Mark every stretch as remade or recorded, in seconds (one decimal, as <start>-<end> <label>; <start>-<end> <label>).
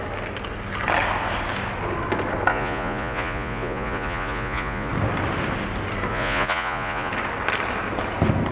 0.0-2.5 recorded; 2.5-4.9 remade; 4.9-6.1 recorded; 6.1-7.1 remade; 7.1-8.5 recorded